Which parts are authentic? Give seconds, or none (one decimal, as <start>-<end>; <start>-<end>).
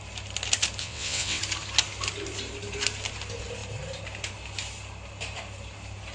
0.0-0.8; 1.4-6.1